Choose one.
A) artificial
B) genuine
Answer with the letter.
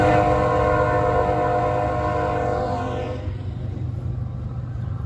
B